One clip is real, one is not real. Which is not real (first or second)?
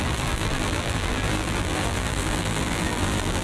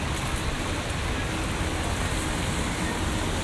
first